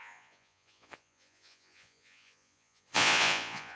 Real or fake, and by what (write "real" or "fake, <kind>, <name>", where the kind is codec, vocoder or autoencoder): fake, vocoder, Vocos